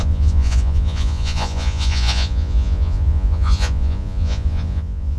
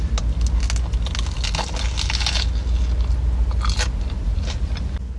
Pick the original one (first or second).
second